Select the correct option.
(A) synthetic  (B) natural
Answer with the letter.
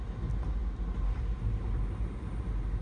B